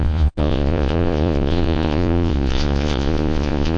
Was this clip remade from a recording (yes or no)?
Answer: yes